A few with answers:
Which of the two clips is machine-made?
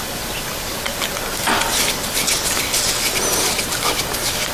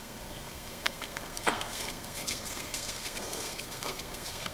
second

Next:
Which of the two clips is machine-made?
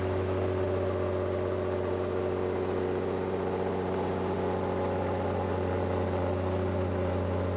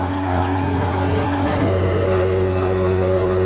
second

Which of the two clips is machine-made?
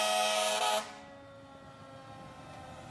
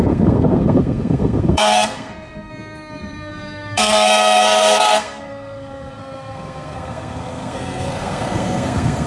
second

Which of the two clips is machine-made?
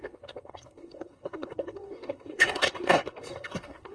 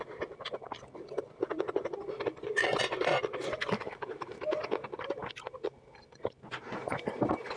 first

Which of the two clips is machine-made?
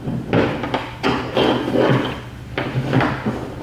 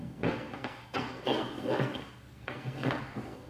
second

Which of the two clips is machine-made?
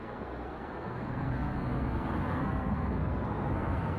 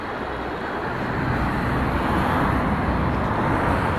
first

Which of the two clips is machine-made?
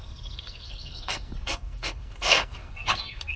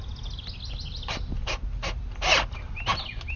first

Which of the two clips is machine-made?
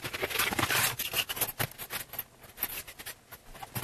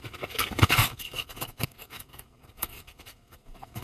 second